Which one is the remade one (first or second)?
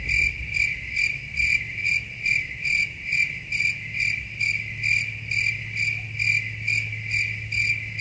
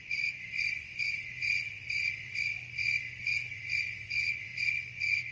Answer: second